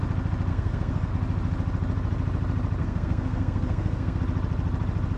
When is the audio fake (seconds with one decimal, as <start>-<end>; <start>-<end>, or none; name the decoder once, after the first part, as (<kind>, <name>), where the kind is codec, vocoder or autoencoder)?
0.5-1.1 (codec, SNAC); 2.8-4.2